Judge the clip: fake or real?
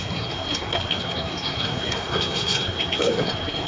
fake